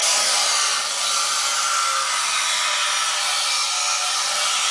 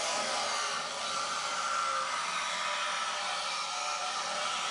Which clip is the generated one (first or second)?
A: second